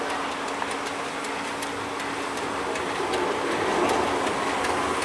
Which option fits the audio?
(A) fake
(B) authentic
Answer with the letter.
B